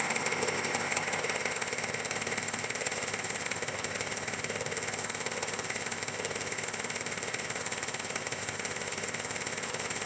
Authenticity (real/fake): fake